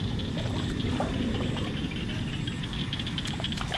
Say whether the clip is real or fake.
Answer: fake